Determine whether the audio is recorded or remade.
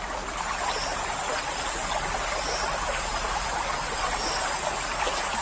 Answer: recorded